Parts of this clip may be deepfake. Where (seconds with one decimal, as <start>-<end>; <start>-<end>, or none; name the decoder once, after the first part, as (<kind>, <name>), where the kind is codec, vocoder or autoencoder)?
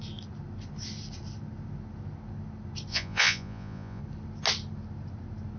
2.9-4.0 (vocoder, Vocos)